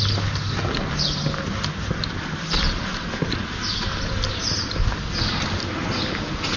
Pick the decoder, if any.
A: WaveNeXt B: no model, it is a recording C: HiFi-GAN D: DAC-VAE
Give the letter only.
B